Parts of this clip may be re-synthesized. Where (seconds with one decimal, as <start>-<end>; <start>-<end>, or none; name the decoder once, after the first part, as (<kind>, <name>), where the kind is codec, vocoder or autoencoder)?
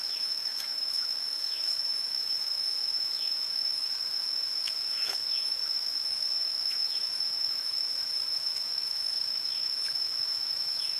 0.0-11.0 (autoencoder, DAC-VAE)